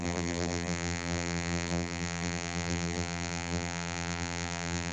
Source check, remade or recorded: remade